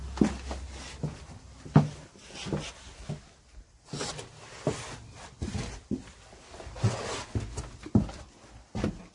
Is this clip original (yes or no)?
yes